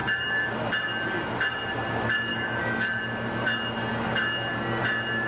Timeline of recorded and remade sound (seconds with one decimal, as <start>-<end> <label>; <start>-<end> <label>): 0.0-0.5 remade; 0.5-2.3 recorded; 2.3-3.0 remade; 3.0-5.3 recorded